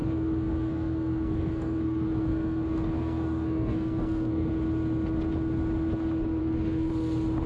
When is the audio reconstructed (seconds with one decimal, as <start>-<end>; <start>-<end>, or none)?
0.0-4.5; 6.4-6.9